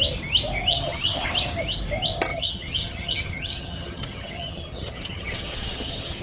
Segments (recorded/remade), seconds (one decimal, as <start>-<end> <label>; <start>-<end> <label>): 0.0-0.7 recorded; 0.7-1.3 remade; 1.3-2.3 recorded; 2.3-6.2 remade